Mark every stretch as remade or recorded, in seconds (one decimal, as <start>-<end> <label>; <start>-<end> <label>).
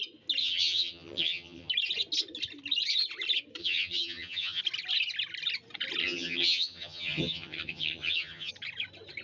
0.0-0.4 recorded; 0.4-1.7 remade; 1.7-3.6 recorded; 3.6-4.6 remade; 4.6-6.0 recorded; 6.0-8.5 remade; 8.5-9.2 recorded